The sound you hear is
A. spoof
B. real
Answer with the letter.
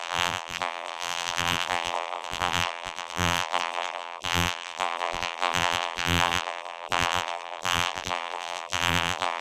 A